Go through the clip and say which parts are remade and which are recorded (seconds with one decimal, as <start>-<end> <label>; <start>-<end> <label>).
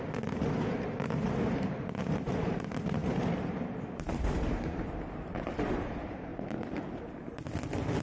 0.0-6.3 remade; 6.3-8.0 recorded